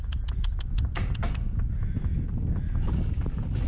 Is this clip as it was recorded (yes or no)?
yes